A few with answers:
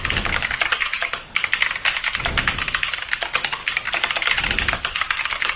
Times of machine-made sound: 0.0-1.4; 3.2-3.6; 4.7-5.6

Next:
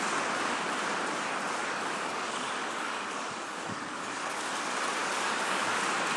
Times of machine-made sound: 1.6-4.4; 5.0-5.8

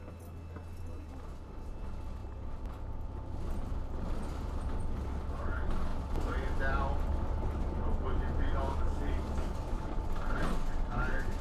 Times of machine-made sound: 8.7-10.0

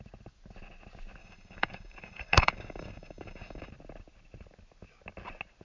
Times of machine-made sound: 1.2-3.7

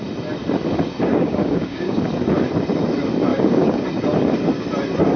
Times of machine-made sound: 1.1-2.0; 3.3-3.8

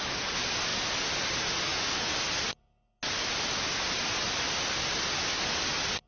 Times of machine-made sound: none

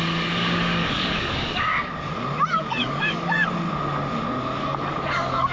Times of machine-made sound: 0.0-1.9; 2.5-3.5; 4.6-5.5

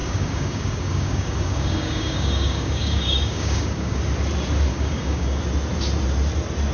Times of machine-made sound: 0.0-4.0; 4.7-5.4